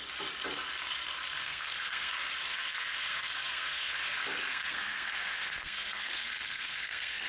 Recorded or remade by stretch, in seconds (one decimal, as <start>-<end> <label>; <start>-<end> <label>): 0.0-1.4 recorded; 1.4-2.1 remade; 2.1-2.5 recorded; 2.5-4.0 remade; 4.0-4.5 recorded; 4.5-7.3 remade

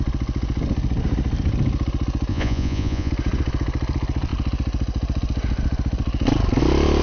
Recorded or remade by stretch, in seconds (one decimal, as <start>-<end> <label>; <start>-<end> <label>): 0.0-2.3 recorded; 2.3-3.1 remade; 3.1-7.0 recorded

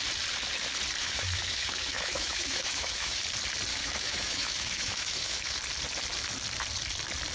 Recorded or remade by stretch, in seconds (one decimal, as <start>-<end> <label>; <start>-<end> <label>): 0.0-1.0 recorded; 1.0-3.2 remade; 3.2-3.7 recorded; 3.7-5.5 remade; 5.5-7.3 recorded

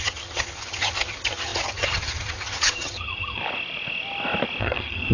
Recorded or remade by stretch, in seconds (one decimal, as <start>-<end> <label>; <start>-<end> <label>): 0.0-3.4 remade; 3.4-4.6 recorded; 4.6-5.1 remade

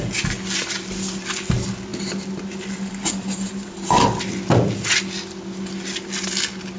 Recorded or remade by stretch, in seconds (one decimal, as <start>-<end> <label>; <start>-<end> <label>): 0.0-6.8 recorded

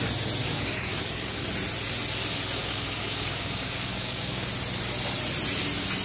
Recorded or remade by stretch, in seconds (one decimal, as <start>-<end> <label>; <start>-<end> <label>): 0.0-0.4 recorded; 0.4-1.4 remade; 1.4-2.6 recorded; 2.6-4.5 remade; 4.5-6.0 recorded